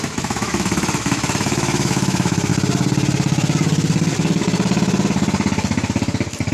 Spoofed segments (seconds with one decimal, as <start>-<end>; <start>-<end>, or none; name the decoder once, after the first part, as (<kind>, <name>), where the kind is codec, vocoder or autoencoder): 0.0-2.5 (autoencoder, DAC-VAE)